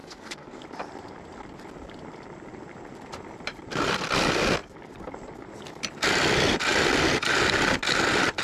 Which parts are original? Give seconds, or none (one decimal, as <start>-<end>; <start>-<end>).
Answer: 0.6-8.4